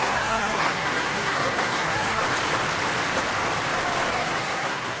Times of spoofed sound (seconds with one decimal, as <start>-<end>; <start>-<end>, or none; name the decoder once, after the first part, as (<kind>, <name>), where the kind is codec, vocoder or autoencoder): 0.0-2.2 (codec, SNAC); 4.1-5.0